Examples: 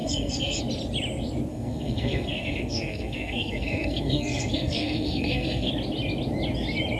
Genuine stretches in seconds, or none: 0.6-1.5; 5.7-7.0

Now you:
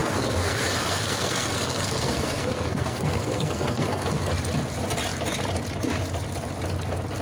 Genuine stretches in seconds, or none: 4.3-7.2

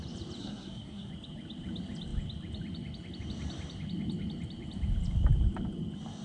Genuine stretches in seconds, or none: 0.0-0.4; 1.1-6.2